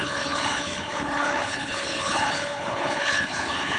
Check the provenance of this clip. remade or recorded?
remade